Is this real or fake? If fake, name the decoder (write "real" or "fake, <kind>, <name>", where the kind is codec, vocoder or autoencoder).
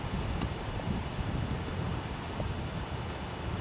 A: real